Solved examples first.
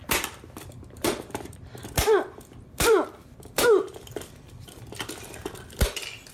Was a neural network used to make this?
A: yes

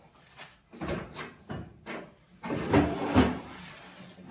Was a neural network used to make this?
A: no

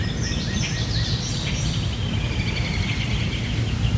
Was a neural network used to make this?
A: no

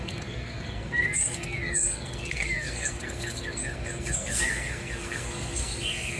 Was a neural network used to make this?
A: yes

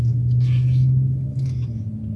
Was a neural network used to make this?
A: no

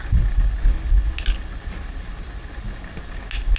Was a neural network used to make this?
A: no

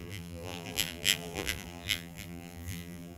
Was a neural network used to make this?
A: yes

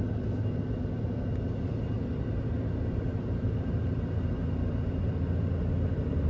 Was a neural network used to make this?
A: no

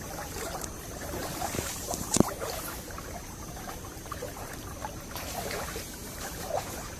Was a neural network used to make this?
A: yes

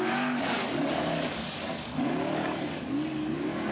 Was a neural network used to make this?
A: yes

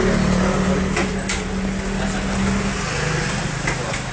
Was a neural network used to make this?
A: no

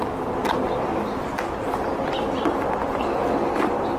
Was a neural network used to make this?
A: no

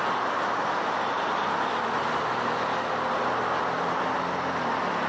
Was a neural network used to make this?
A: no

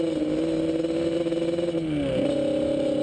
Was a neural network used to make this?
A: no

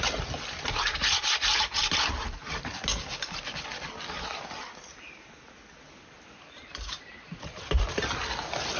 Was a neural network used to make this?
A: no